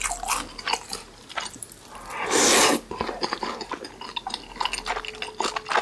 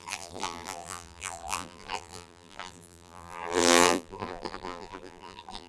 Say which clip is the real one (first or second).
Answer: first